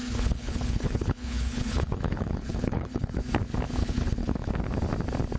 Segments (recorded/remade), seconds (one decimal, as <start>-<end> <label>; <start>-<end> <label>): 0.0-3.2 remade; 3.2-3.8 recorded; 3.8-4.5 remade; 4.5-5.4 recorded